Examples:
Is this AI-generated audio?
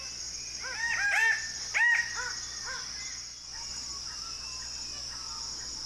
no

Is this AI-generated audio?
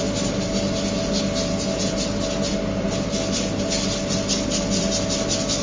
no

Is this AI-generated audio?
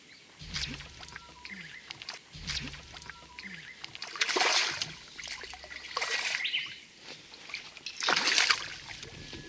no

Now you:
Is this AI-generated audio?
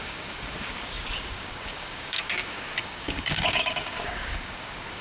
yes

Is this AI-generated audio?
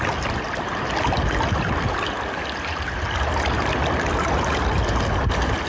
no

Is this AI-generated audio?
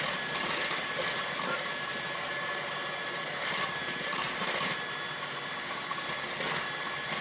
no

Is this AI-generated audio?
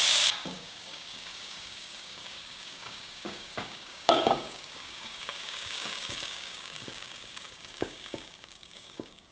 yes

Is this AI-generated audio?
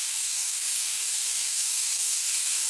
yes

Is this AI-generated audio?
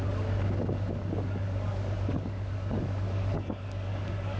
yes